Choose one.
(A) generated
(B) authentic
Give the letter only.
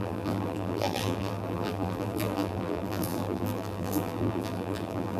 A